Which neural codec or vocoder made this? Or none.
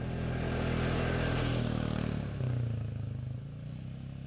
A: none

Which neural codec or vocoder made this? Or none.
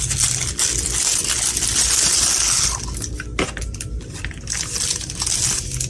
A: none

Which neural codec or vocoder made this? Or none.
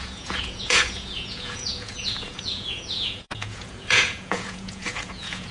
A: vocoder, Vocos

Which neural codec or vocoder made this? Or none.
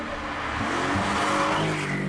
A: none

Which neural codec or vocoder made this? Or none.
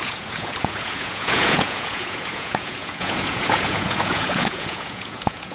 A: vocoder, Vocos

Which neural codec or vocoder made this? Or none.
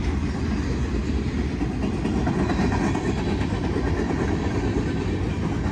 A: none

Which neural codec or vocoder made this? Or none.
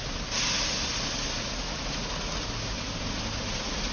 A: none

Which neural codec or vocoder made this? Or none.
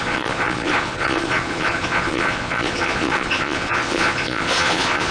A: vocoder, Vocos